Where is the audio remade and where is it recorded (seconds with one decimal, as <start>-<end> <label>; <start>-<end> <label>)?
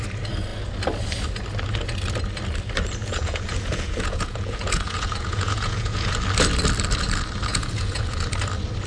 0.0-3.0 recorded; 3.0-6.1 remade; 6.1-7.5 recorded; 7.5-8.2 remade; 8.2-8.9 recorded